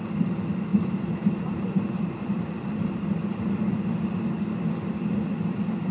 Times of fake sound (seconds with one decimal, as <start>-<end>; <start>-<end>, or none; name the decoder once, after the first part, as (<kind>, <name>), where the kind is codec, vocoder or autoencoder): 0.7-3.5 (vocoder, BigVGAN v2)